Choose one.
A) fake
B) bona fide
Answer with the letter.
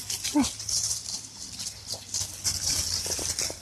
B